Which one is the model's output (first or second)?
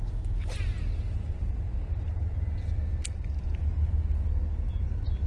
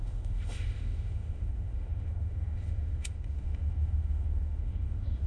second